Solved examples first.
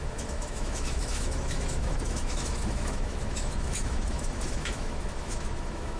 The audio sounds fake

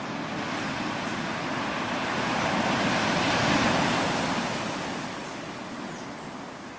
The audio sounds real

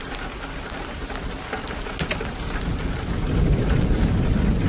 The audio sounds real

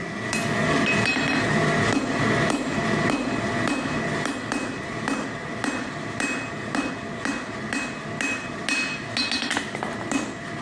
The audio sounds real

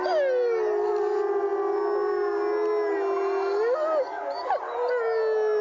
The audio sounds real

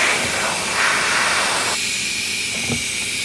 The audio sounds real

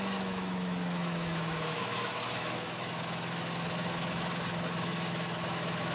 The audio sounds fake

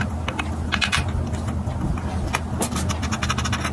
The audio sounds real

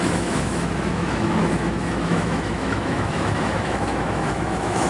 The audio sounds fake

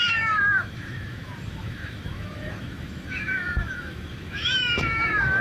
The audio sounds fake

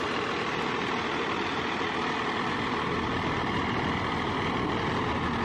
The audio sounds real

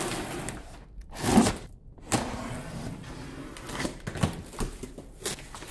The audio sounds real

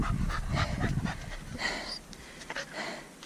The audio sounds real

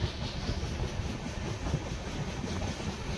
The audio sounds real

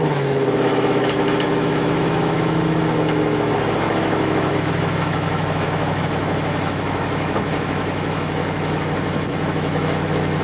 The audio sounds fake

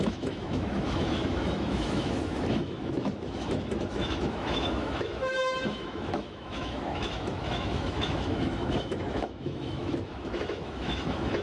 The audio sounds fake